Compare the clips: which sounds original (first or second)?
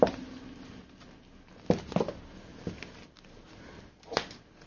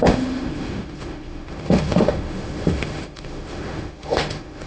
first